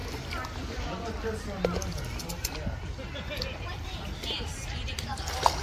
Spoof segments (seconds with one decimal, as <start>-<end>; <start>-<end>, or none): none